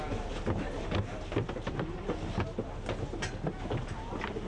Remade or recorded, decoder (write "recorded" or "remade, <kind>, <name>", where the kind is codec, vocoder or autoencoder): recorded